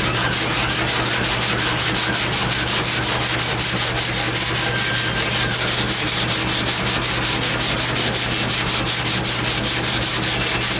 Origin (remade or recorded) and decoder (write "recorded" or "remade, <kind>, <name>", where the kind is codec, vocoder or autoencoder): recorded